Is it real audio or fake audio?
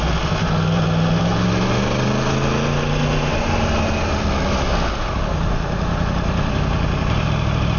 real